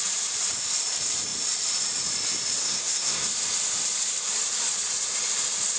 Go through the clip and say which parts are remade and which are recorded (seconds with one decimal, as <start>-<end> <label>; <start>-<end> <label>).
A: 0.0-2.6 recorded; 2.6-3.3 remade; 3.3-5.8 recorded